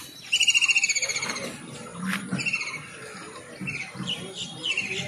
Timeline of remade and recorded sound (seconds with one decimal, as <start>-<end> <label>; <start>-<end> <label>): 0.0-5.1 recorded